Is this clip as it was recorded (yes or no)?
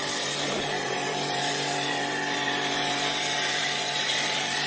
no